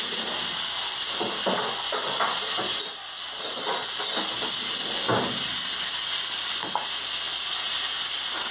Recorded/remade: recorded